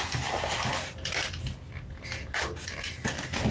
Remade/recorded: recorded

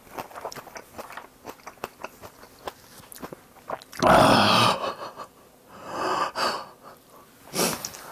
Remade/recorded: recorded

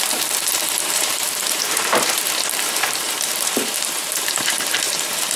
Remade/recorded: remade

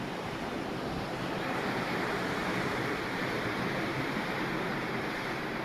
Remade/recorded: remade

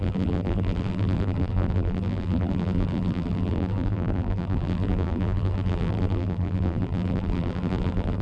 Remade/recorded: remade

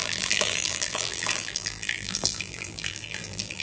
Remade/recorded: remade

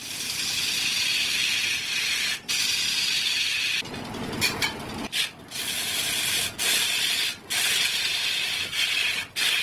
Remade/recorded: recorded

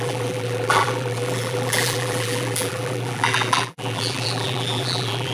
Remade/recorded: remade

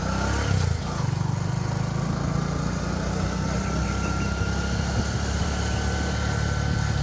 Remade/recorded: recorded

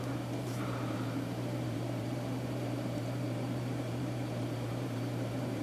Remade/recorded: remade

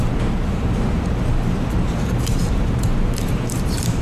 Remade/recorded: remade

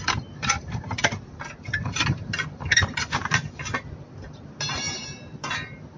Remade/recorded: remade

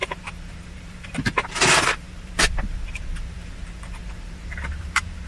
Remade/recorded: remade